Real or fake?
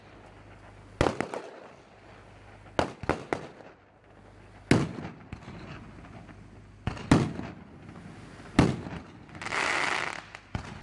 real